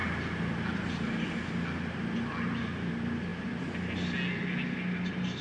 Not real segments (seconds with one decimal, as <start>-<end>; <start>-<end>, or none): none